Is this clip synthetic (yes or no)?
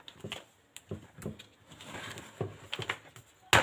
no